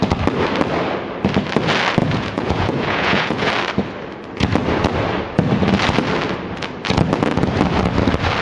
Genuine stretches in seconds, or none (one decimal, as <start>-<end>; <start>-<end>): 0.0-2.0; 3.5-8.4